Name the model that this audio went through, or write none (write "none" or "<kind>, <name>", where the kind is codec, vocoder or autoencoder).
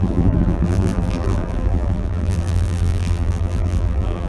vocoder, BigVGAN v2